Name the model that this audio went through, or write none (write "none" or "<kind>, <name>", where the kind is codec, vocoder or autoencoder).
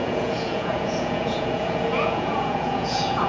vocoder, Vocos